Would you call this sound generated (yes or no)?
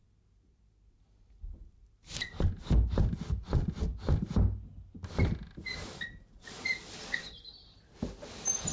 no